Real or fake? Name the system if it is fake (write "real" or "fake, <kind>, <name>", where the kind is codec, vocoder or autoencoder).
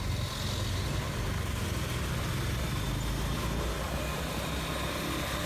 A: real